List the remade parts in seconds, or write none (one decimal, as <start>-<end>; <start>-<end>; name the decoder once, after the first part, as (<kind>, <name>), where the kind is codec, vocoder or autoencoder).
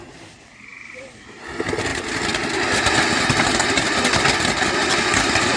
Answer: none